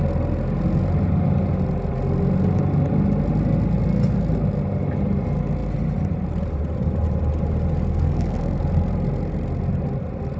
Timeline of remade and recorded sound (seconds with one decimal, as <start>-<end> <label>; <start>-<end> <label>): 0.0-7.9 recorded; 7.9-8.6 remade; 8.6-10.4 recorded